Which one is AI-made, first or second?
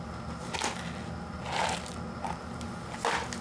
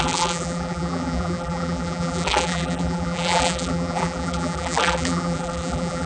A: second